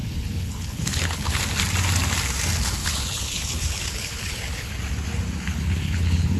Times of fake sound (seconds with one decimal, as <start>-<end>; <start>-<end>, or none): 0.0-1.4; 2.8-4.7; 5.5-6.4